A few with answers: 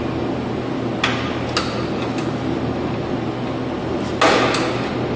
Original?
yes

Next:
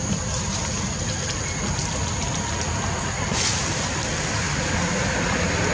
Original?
yes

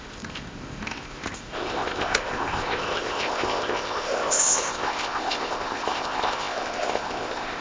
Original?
no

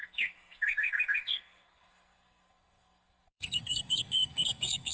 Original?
no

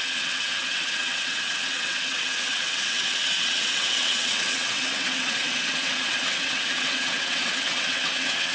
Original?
no